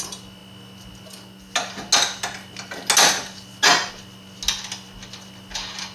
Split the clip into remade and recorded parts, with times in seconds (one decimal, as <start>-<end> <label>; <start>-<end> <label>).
0.0-5.9 recorded